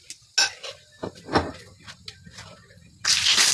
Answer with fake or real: real